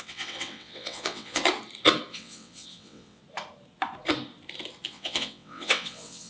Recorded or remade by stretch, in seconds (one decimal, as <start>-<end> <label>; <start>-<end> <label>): 0.0-1.4 remade; 1.4-2.1 recorded; 2.1-3.2 remade; 3.2-4.9 recorded; 4.9-6.3 remade

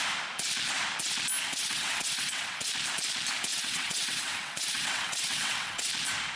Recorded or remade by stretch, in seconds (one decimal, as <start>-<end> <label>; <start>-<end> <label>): 0.0-1.4 recorded; 1.4-2.7 remade; 2.7-3.5 recorded; 3.5-5.9 remade; 5.9-6.4 recorded

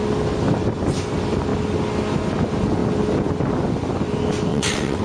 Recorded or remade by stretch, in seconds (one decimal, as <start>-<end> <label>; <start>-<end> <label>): 0.0-4.5 recorded; 4.5-5.0 remade

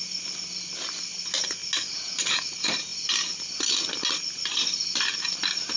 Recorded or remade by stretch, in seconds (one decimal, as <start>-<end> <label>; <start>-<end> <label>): 0.0-5.8 recorded

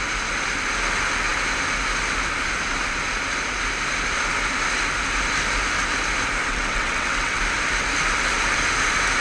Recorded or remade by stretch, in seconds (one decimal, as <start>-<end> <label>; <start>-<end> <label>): 0.0-6.5 recorded; 6.5-7.4 remade; 7.4-9.2 recorded